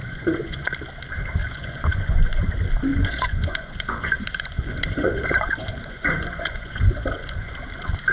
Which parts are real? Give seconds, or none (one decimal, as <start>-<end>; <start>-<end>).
0.7-1.4; 2.5-2.9; 7.5-8.1